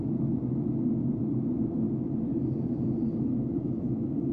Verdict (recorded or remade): recorded